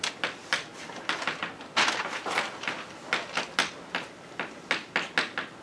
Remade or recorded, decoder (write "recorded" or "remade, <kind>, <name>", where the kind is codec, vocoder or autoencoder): recorded